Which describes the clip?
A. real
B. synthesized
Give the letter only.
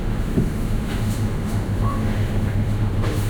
B